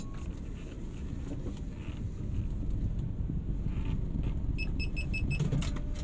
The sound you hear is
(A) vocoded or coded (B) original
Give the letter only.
B